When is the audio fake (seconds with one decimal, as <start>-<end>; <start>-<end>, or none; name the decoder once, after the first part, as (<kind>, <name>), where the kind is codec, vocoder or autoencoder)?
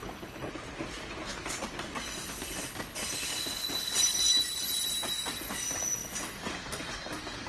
0.0-0.5 (codec, HILCodec)